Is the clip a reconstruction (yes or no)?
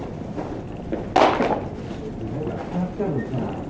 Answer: no